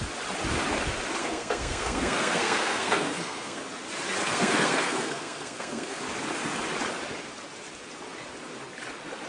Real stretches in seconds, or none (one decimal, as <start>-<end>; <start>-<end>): 0.0-1.2; 3.6-4.2; 6.0-9.3